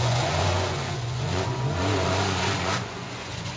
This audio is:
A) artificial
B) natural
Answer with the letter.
A